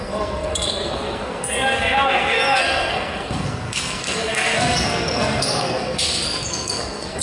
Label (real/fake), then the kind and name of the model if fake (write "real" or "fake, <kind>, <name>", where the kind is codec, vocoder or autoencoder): fake, codec, SNAC